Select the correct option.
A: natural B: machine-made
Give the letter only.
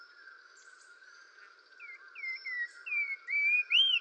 A